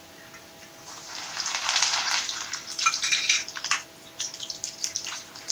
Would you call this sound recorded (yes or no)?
yes